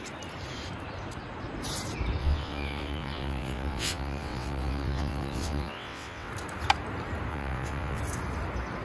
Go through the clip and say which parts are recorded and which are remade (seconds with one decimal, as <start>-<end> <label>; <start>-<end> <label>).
0.0-2.2 recorded; 2.2-6.3 remade; 6.3-7.3 recorded; 7.3-8.0 remade; 8.0-8.8 recorded